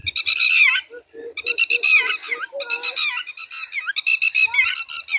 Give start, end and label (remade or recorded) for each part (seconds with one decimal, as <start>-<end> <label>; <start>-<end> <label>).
0.0-3.1 remade; 3.1-5.2 recorded

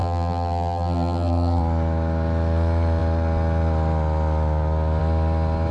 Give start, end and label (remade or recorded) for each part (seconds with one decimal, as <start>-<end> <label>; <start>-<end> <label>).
0.0-1.6 remade; 1.6-5.7 recorded

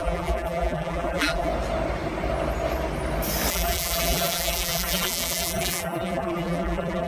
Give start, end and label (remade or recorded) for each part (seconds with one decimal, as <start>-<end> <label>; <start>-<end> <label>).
0.0-1.5 remade; 1.5-3.5 recorded; 3.5-7.1 remade

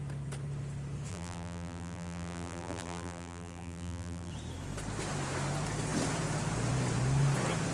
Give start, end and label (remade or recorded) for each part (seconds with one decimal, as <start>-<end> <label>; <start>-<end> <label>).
0.0-1.1 recorded; 1.1-4.3 remade; 4.3-7.7 recorded

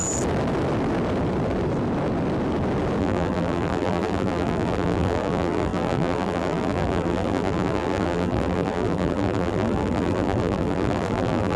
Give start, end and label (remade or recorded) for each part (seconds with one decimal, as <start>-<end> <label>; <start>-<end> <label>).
0.0-3.0 recorded; 3.0-11.6 remade